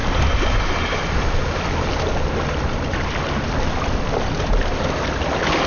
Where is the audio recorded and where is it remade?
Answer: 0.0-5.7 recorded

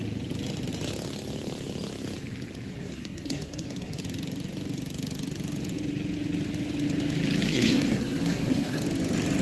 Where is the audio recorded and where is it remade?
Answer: 0.0-2.7 recorded; 2.7-4.0 remade; 4.0-7.4 recorded; 7.4-8.8 remade; 8.8-9.4 recorded

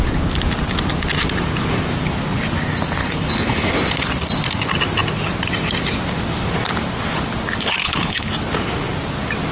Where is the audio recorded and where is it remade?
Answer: 0.0-3.0 recorded; 3.0-3.7 remade; 3.7-7.8 recorded; 7.8-8.3 remade; 8.3-9.5 recorded